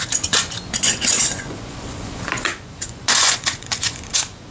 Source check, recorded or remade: remade